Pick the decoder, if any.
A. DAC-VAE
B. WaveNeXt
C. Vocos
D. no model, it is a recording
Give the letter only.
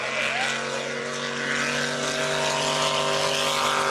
D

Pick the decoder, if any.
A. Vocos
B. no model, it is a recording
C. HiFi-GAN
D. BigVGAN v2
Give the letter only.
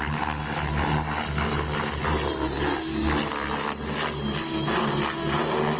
B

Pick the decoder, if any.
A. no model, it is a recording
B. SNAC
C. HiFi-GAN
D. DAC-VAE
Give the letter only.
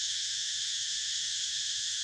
D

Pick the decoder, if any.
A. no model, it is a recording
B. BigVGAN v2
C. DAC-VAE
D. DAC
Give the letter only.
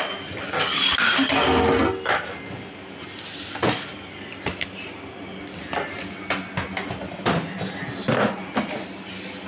A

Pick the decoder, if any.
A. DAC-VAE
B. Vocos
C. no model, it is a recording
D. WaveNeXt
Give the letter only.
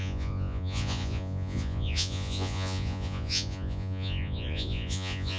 B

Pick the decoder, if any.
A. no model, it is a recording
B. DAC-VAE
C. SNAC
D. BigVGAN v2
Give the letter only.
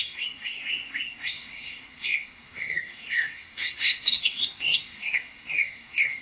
C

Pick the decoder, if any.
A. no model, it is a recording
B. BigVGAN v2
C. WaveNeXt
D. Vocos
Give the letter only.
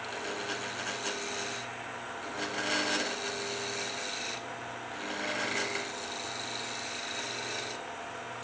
A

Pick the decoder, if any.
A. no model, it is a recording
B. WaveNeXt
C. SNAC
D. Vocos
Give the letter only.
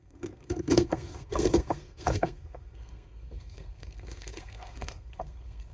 C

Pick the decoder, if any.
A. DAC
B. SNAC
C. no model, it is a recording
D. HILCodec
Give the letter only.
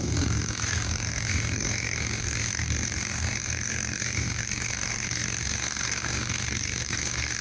A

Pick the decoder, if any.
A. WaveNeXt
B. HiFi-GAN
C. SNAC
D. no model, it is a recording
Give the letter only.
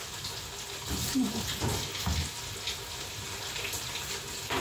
D